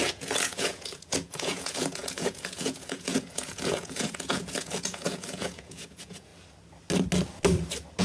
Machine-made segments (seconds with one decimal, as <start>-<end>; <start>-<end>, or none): 0.0-6.3